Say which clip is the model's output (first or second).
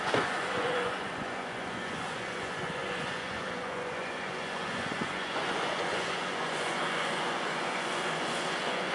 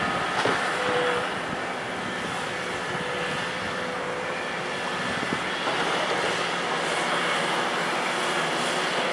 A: first